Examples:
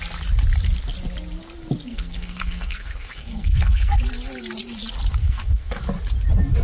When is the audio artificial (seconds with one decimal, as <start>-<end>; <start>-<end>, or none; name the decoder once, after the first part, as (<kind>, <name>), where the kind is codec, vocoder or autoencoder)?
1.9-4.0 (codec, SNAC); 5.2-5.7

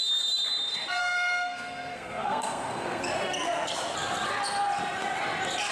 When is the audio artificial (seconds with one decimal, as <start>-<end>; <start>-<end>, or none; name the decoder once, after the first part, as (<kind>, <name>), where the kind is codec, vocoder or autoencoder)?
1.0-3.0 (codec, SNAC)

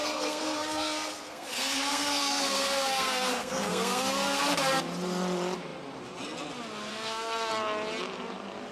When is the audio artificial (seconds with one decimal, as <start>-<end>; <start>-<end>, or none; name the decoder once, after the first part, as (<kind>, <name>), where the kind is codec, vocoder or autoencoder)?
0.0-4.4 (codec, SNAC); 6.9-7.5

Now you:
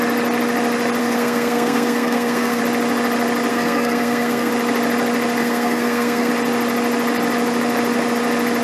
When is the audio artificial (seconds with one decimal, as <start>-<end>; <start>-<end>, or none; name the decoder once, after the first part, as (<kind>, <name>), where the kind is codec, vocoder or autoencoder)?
1.0-2.6 (codec, SNAC); 3.5-4.5; 5.4-6.3

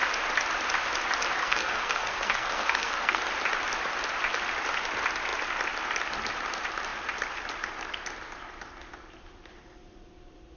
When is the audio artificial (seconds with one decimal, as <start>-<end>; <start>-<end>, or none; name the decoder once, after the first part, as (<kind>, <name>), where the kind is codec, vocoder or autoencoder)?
1.4-3.2 (codec, SNAC)

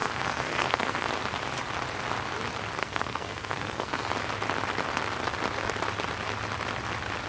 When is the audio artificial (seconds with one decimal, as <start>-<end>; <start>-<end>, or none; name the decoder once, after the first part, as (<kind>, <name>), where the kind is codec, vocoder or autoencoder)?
0.0-1.1 (codec, SNAC); 2.8-4.1

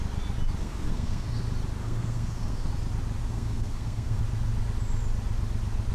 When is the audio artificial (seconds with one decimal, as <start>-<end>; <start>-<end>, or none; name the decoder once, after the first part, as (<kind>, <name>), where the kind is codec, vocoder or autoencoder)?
0.6-1.4 (codec, SNAC); 1.8-2.7; 3.2-4.2